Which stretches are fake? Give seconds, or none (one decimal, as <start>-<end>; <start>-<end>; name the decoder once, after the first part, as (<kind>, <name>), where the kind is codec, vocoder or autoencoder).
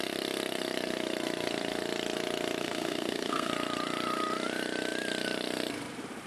2.6-3.5 (codec, SNAC)